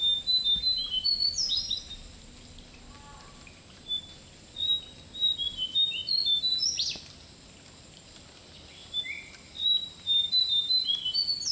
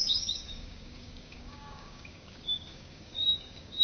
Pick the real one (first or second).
first